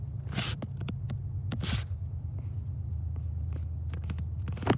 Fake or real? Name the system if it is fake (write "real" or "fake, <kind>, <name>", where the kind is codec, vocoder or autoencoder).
real